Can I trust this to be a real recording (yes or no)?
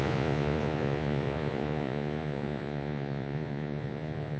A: no